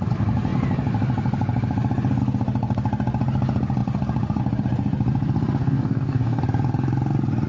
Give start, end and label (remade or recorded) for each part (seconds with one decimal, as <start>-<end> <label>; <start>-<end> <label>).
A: 0.0-5.6 recorded; 5.6-6.4 remade; 6.4-7.5 recorded

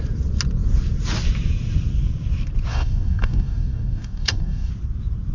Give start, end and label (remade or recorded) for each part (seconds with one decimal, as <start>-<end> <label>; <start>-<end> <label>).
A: 0.0-2.7 recorded; 2.7-4.7 remade; 4.7-5.3 recorded

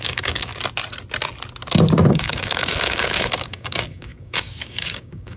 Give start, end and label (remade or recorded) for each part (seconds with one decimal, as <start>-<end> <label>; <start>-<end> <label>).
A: 0.0-0.5 remade; 0.5-2.1 recorded; 2.1-5.4 remade

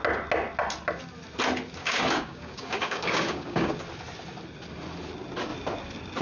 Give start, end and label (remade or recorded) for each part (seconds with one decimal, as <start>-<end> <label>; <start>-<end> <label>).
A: 0.0-1.8 recorded; 1.8-3.7 remade; 3.7-6.2 recorded

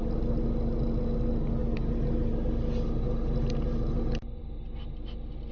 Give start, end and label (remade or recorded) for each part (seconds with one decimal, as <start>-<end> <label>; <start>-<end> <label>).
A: 0.0-5.5 recorded